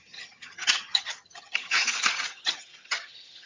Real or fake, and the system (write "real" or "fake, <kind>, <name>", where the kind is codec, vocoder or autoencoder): fake, vocoder, HiFi-GAN